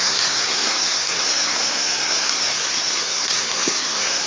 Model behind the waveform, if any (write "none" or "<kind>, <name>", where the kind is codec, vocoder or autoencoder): codec, SNAC